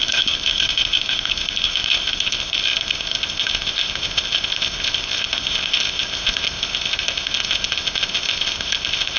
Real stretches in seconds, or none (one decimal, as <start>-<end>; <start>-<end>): none